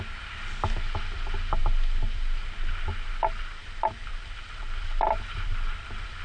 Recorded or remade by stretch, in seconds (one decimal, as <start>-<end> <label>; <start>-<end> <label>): 0.0-3.6 recorded; 3.6-6.2 remade